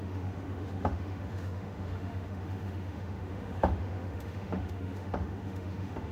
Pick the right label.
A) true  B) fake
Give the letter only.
B